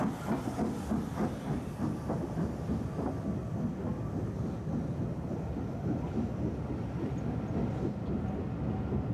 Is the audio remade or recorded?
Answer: recorded